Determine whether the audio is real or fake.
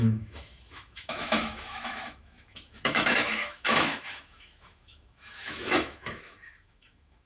fake